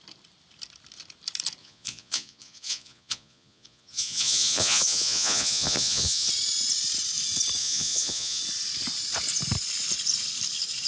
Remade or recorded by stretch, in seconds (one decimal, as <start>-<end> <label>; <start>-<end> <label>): 0.0-1.6 recorded; 1.6-6.3 remade; 6.3-7.6 recorded; 7.6-8.4 remade; 8.4-10.9 recorded